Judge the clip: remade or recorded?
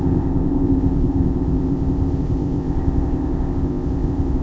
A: remade